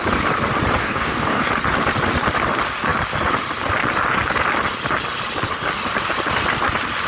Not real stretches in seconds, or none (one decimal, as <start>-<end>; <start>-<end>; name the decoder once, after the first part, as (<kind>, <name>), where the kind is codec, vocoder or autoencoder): 0.8-1.5 (codec, DAC)